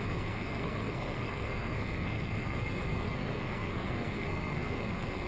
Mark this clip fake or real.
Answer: fake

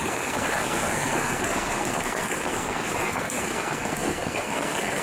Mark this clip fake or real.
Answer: fake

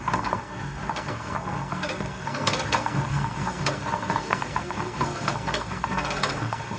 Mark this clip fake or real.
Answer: fake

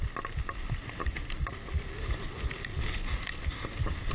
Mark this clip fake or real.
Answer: real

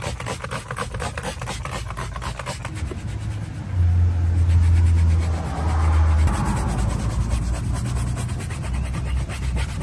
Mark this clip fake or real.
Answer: real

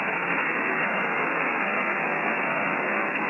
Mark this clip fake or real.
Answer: fake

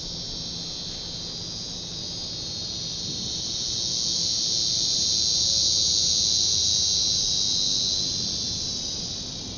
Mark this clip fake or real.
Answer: real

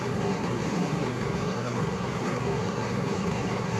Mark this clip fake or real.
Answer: fake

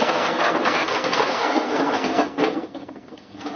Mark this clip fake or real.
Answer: fake